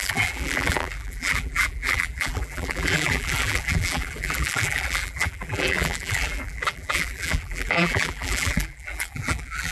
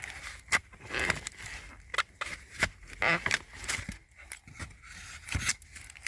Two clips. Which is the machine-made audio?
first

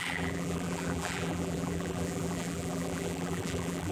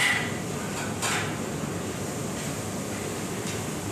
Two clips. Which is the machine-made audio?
first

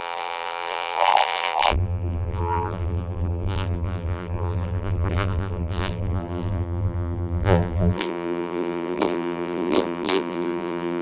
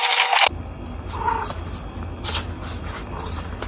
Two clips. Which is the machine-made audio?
first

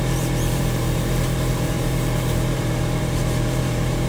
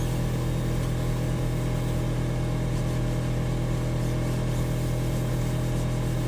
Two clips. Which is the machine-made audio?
first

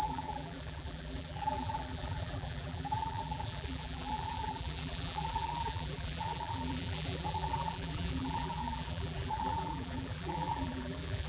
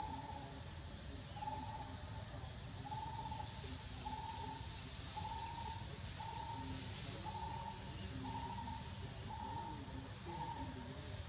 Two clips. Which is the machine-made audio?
first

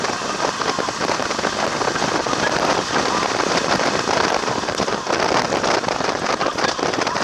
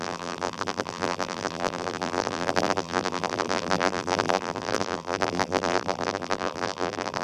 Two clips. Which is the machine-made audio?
second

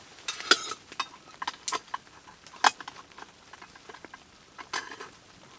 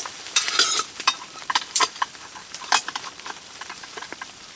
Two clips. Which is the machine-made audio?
second